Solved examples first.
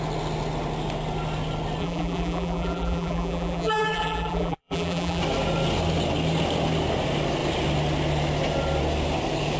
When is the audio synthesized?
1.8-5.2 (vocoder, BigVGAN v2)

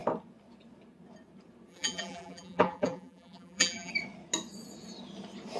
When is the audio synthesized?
1.7-3.9 (vocoder, BigVGAN v2)